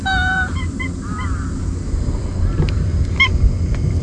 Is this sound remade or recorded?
remade